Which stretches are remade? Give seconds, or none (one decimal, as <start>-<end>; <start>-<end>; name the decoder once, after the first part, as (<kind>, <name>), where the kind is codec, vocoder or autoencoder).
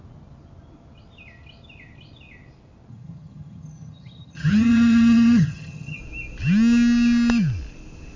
2.9-6.0 (vocoder, HiFi-GAN)